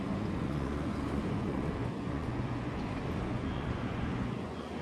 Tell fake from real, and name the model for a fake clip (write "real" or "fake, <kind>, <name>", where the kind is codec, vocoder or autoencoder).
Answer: fake, vocoder, Vocos